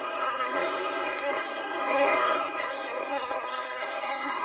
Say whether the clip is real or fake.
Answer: fake